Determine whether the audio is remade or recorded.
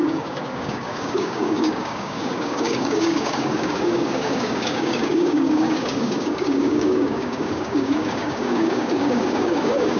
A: remade